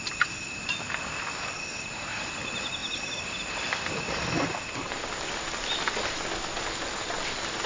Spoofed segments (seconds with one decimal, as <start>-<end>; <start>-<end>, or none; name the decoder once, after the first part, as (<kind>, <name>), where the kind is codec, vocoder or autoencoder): none

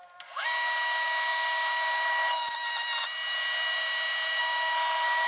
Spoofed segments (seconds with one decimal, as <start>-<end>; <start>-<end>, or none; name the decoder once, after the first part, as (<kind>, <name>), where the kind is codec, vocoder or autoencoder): none

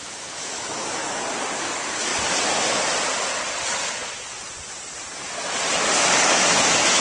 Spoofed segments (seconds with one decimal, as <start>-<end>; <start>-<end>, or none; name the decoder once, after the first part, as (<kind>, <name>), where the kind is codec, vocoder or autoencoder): 0.0-1.0 (autoencoder, DAC-VAE); 1.6-2.1; 6.3-7.0

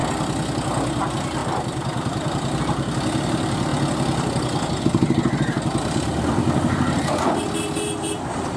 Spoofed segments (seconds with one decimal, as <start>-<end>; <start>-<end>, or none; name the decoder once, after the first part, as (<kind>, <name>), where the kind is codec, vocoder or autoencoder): 1.4-2.6 (vocoder, BigVGAN v2); 6.1-7.3